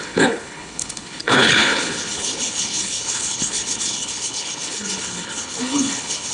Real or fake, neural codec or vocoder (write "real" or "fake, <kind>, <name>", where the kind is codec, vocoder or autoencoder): fake, codec, HILCodec